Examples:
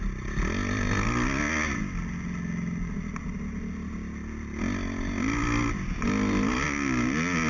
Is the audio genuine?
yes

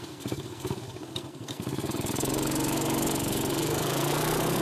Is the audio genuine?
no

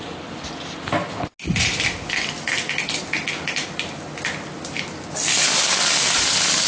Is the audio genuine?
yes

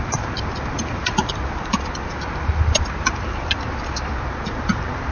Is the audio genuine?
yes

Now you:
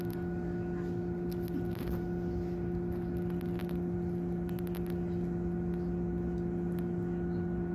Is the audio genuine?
yes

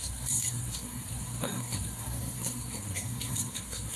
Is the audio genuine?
no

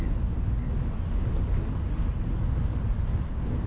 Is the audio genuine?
yes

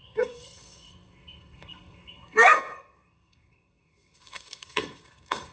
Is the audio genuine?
no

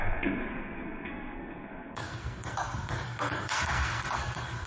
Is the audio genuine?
no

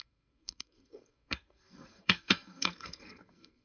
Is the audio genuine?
no